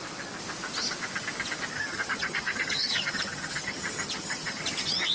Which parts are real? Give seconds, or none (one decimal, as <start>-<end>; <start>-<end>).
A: 0.0-1.7